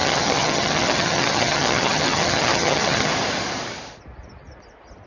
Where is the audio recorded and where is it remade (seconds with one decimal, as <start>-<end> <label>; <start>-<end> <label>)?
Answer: 0.0-3.1 remade; 3.1-5.1 recorded